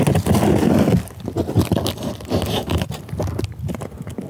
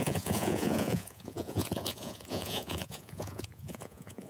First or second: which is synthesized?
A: second